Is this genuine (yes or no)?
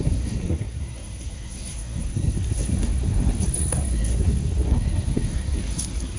no